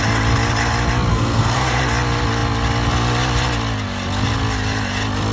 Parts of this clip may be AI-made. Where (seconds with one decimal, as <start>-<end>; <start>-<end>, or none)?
1.1-1.8